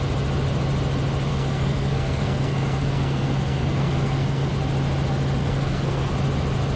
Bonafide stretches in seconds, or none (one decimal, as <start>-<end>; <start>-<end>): 0.0-1.3; 4.5-5.4; 6.1-6.8